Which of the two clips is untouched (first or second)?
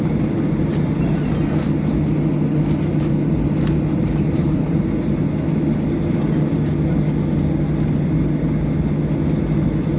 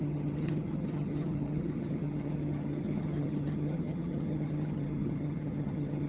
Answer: first